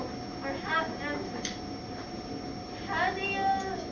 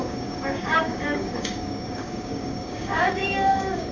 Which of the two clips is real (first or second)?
first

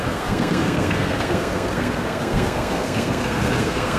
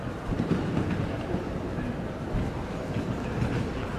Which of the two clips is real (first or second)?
second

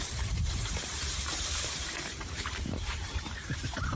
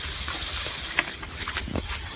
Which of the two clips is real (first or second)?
second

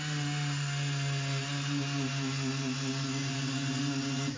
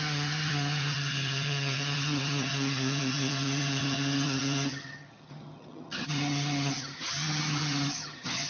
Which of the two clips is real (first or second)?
first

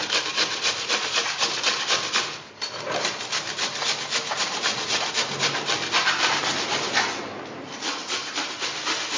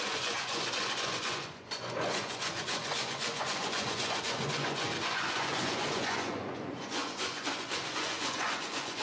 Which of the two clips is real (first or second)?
first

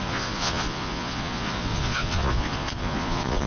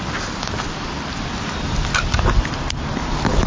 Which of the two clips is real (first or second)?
second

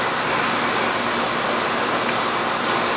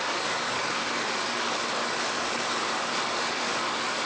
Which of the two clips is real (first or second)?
first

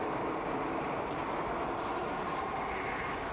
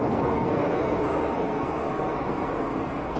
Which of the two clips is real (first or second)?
first